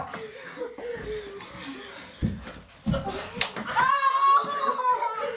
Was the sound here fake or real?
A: real